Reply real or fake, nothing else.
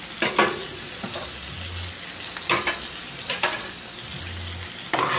real